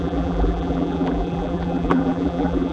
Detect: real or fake fake